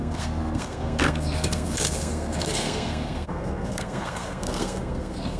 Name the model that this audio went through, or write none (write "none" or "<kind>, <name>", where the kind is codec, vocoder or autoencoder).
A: codec, SNAC